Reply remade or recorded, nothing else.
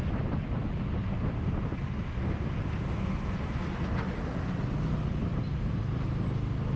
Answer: recorded